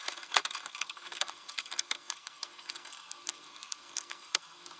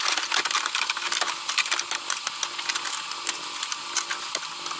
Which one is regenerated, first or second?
first